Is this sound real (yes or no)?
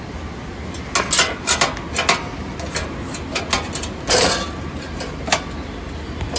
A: yes